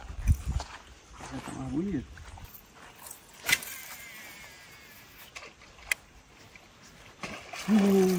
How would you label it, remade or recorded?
recorded